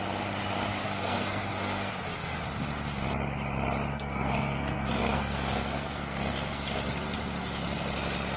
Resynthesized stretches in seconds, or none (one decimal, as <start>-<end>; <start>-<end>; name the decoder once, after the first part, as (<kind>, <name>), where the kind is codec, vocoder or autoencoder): 0.8-1.9 (codec, SNAC); 3.9-6.6